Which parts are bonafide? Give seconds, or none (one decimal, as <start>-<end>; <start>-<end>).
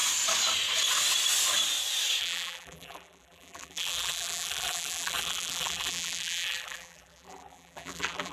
0.0-2.2